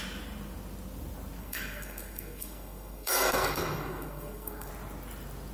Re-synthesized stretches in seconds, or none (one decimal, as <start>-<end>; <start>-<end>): 1.4-4.7